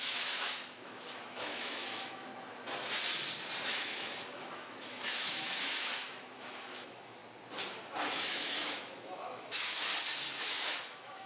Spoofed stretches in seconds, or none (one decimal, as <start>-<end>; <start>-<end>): 0.0-2.3; 3.7-7.2; 8.1-9.9; 10.4-11.3